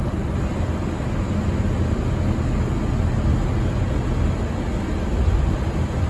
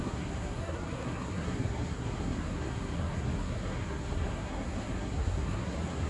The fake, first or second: second